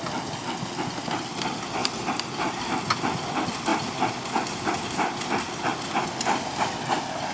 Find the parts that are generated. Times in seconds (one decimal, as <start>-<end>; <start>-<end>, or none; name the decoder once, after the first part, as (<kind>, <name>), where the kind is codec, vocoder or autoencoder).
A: none